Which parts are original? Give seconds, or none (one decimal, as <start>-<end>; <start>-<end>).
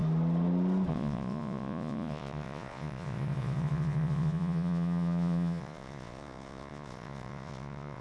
0.0-0.9